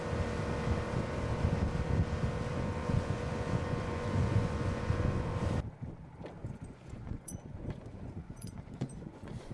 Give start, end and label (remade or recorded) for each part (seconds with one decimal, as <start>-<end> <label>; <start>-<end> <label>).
0.0-2.5 recorded; 2.5-5.3 remade; 5.3-6.4 recorded; 6.4-9.5 remade